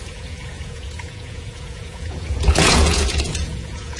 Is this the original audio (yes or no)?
no